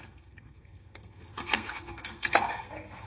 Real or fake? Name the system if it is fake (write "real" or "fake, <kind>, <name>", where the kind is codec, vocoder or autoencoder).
fake, codec, SNAC